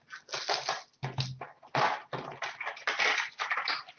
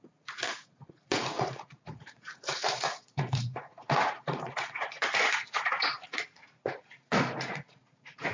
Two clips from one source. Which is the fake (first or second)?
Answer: second